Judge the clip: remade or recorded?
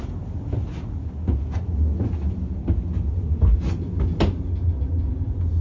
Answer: recorded